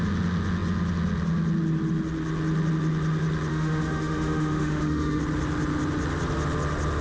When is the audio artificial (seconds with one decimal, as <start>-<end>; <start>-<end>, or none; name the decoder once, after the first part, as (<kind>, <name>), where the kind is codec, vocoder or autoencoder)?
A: 3.5-5.2 (autoencoder, DAC-VAE)